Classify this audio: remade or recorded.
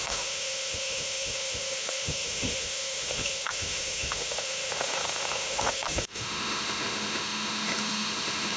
remade